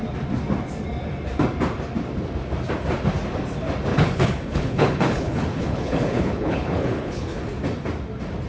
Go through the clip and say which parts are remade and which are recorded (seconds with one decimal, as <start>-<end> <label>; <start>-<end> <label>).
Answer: 0.0-3.9 recorded; 3.9-7.4 remade; 7.4-8.5 recorded